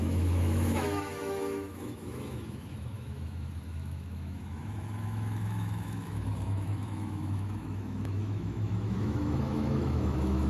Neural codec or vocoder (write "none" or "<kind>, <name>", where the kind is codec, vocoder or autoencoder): autoencoder, DAC-VAE